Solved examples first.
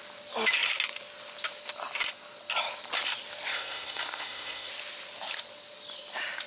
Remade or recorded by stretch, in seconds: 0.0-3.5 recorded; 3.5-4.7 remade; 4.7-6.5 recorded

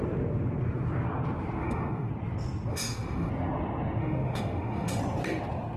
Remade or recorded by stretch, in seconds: 0.0-1.6 recorded; 1.6-2.1 remade; 2.1-2.7 recorded; 2.7-3.3 remade; 3.3-4.0 recorded; 4.0-5.0 remade; 5.0-5.8 recorded

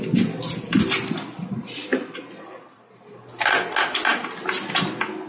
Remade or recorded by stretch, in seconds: 0.0-1.9 recorded; 1.9-2.9 remade; 2.9-5.3 recorded

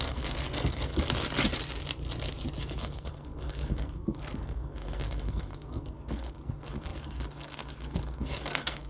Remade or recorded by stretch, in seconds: 0.0-0.9 remade; 0.9-2.6 recorded; 2.6-8.9 remade

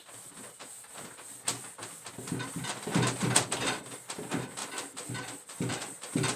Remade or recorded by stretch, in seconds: 0.0-4.6 remade; 4.6-5.1 recorded; 5.1-6.4 remade

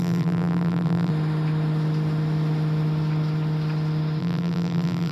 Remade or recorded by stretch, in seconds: 0.0-1.1 remade; 1.1-4.2 recorded; 4.2-5.1 remade

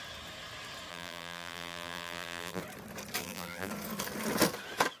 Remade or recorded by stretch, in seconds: 0.0-0.9 recorded; 0.9-2.6 remade; 2.6-3.2 recorded; 3.2-3.7 remade; 3.7-5.0 recorded

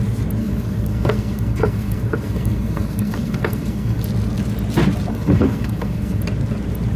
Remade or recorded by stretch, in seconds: 0.0-0.4 recorded; 0.4-4.0 remade; 4.0-5.1 recorded; 5.1-6.2 remade; 6.2-7.0 recorded